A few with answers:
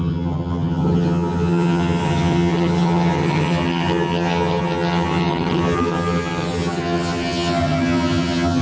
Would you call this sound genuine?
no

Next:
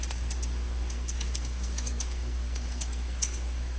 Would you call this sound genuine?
no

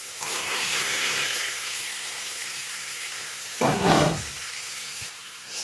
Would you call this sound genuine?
no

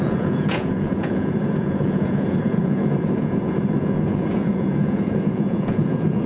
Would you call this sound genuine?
no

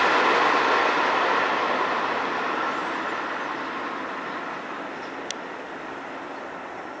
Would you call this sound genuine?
yes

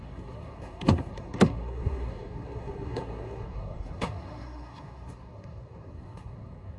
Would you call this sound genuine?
no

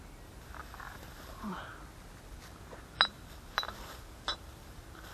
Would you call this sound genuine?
yes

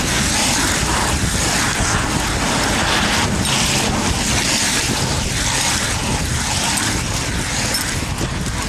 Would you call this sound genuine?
yes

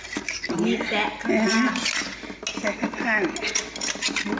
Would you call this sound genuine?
yes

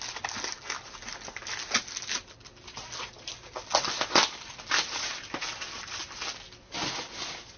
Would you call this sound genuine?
yes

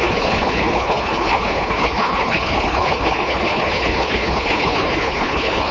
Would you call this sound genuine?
no